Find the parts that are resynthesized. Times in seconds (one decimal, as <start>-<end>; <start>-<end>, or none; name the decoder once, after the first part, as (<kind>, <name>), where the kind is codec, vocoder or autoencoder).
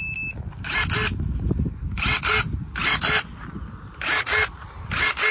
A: none